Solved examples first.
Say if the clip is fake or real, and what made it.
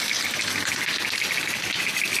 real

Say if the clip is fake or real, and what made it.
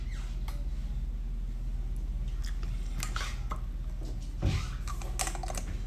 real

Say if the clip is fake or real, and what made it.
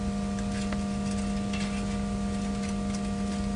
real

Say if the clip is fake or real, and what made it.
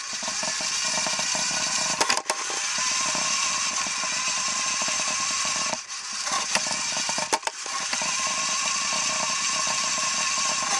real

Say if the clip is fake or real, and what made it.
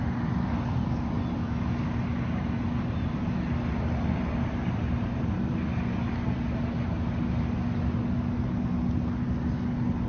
real